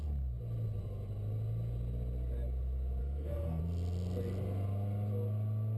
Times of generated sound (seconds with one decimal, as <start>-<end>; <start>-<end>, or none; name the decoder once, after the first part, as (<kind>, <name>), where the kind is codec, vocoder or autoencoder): 3.0-3.6 (codec, SNAC)